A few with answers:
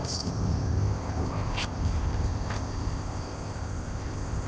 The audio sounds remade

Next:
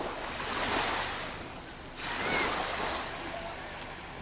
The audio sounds recorded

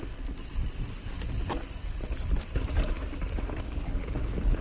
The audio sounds recorded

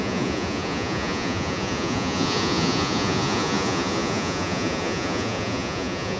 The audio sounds remade